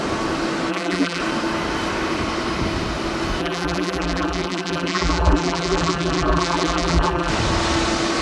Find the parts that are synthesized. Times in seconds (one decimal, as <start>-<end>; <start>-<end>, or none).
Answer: 0.7-1.2; 3.4-7.3